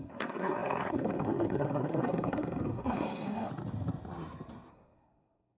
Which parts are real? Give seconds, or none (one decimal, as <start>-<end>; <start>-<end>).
3.5-4.7